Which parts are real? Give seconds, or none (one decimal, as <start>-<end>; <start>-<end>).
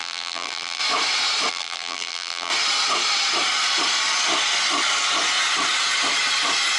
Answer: 0.8-1.5; 2.5-6.8